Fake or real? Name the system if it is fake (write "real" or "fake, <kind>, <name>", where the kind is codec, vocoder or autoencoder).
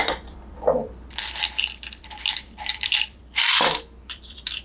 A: fake, vocoder, BigVGAN v2